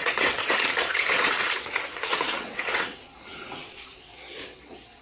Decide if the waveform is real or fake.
fake